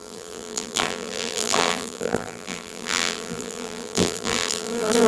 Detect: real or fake fake